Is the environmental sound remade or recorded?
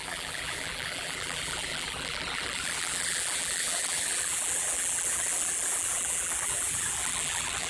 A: remade